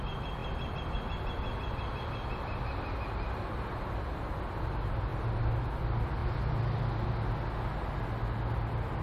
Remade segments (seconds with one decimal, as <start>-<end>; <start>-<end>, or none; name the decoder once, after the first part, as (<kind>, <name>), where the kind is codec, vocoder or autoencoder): none

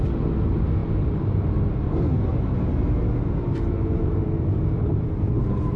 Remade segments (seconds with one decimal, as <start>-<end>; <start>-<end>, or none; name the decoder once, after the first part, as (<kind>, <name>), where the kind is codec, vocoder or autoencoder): 0.8-1.5 (vocoder, BigVGAN v2); 2.3-5.8

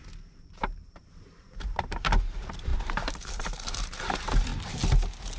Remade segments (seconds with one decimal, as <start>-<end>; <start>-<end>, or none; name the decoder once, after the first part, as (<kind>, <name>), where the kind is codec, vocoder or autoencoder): 0.0-4.5 (vocoder, BigVGAN v2)

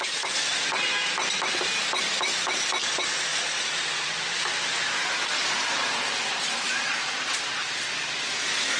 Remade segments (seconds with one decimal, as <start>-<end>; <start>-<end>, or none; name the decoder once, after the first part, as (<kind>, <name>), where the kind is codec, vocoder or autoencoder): 5.0-6.9 (vocoder, BigVGAN v2)

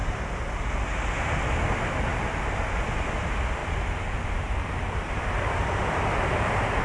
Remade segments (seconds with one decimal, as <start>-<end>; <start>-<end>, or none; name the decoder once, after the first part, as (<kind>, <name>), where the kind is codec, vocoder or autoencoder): 2.1-2.7 (vocoder, BigVGAN v2); 3.6-5.2

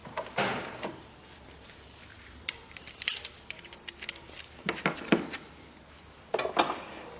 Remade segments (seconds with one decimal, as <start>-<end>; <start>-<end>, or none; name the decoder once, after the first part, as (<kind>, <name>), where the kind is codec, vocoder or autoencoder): 0.0-3.9 (vocoder, BigVGAN v2)

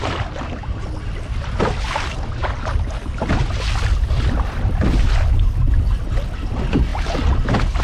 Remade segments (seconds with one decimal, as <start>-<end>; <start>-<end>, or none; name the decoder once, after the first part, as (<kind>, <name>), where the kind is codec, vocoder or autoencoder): none

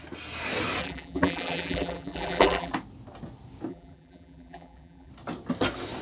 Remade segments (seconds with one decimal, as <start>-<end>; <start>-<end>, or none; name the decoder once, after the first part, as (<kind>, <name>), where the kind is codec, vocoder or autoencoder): 0.8-2.7 (vocoder, BigVGAN v2); 3.7-5.1